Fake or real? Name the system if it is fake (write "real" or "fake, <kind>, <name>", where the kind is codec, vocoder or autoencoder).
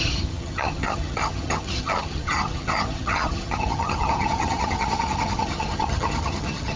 fake, vocoder, HiFi-GAN